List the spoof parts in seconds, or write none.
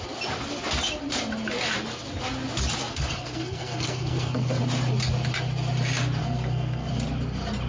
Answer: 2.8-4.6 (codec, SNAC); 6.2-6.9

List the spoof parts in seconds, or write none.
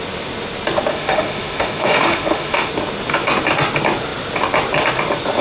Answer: 0.9-2.7 (autoencoder, DAC-VAE)